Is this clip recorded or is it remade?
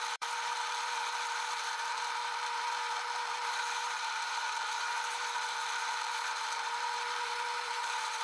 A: remade